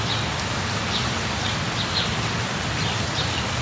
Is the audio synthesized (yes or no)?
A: no